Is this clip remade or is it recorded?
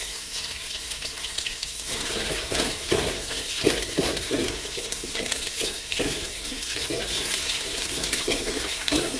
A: remade